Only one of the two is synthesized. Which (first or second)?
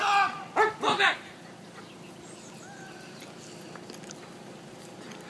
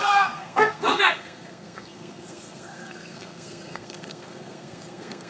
second